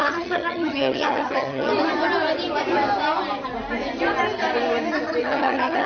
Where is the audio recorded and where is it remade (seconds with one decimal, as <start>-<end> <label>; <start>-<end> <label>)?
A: 0.0-1.7 remade; 1.7-5.2 recorded; 5.2-5.9 remade